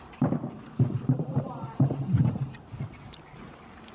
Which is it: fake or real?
fake